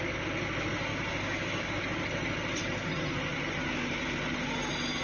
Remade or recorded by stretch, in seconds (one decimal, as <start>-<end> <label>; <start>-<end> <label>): 0.0-0.9 recorded; 0.9-1.8 remade; 1.8-5.0 recorded